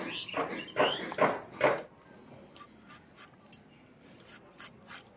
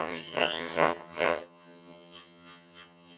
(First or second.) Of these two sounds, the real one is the first